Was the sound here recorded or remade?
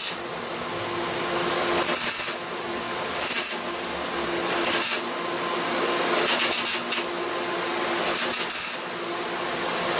recorded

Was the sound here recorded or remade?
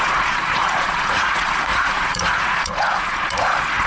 remade